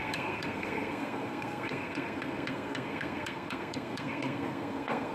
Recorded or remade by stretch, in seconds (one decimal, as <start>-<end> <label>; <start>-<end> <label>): 0.0-5.1 remade